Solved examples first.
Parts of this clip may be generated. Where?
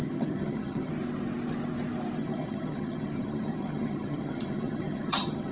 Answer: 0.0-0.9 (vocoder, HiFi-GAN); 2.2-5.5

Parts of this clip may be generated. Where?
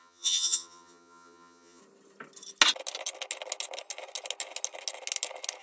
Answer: 0.0-1.8 (vocoder, HiFi-GAN)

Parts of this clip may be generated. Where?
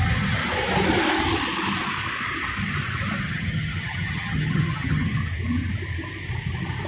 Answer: 0.0-0.4 (vocoder, HiFi-GAN); 3.2-5.2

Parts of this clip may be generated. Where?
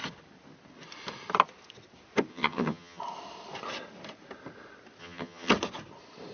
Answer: 2.3-3.0 (vocoder, HiFi-GAN); 5.0-5.5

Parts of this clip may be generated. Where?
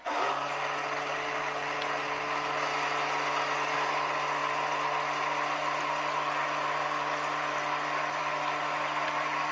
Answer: none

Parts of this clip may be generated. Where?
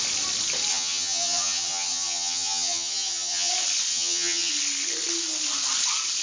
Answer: 0.7-3.5 (vocoder, HiFi-GAN); 3.9-4.5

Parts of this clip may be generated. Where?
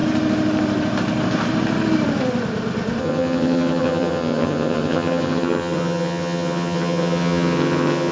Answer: 3.0-8.1 (vocoder, HiFi-GAN)